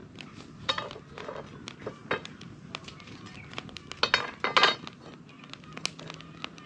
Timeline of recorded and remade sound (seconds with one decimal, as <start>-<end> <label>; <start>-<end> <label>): 0.0-6.7 recorded